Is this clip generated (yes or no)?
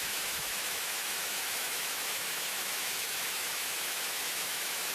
yes